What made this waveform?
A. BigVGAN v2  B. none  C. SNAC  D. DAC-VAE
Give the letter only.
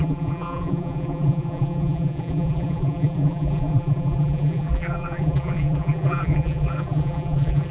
A